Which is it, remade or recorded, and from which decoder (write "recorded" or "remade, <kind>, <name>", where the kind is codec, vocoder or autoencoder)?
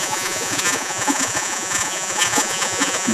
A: remade, vocoder, Vocos